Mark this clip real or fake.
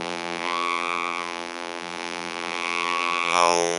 fake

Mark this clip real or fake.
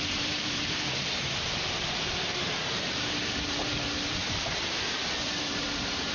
fake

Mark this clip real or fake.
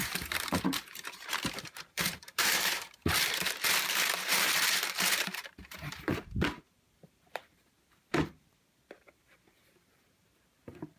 fake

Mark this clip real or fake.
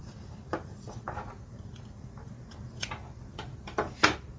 real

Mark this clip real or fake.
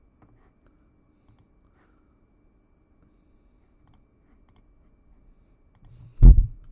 fake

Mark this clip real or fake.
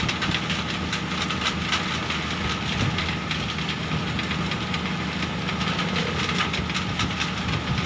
real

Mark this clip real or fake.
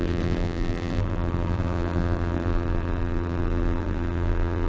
fake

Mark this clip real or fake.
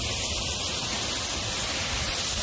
real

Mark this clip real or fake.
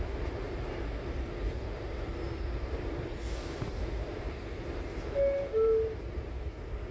fake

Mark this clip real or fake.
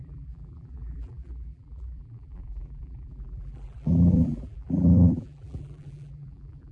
fake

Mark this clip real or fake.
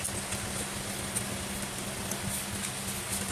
real